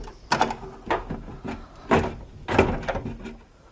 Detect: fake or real real